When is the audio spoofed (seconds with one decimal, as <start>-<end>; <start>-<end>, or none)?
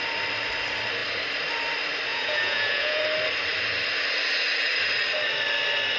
2.1-3.0